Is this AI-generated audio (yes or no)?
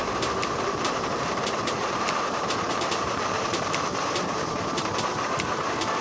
yes